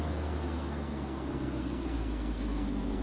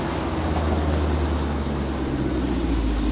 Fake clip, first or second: first